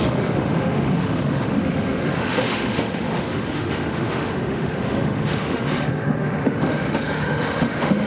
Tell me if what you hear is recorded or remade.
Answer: remade